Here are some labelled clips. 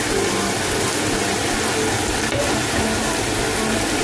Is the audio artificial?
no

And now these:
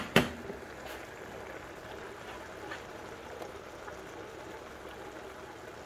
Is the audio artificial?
no